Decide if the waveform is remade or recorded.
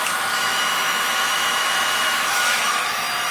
remade